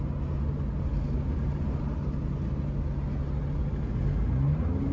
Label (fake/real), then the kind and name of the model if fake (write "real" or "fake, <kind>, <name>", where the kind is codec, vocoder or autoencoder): real